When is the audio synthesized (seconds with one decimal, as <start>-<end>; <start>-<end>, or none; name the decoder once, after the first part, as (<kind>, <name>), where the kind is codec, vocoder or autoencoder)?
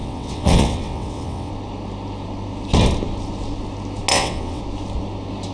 0.0-1.5 (vocoder, WaveNeXt); 4.1-4.6